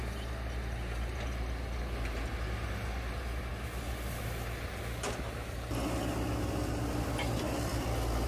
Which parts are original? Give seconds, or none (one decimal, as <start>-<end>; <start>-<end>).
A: 0.0-8.3